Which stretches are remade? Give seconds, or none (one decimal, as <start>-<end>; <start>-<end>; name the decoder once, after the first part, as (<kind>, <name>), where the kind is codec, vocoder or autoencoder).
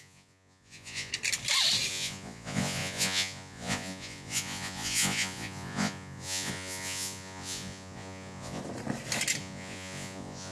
0.0-1.1 (vocoder, Vocos); 1.9-8.6; 9.4-10.5